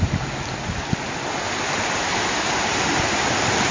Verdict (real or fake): real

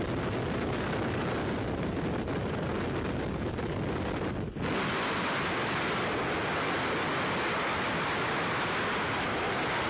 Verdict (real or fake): real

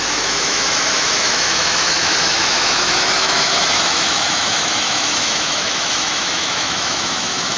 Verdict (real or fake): fake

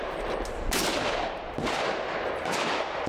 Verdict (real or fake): real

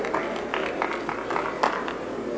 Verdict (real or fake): real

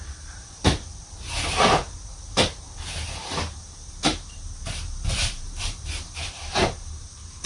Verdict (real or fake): fake